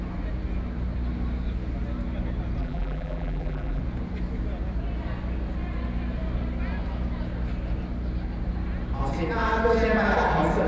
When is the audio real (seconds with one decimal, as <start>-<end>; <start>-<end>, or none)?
0.0-2.6; 3.8-10.7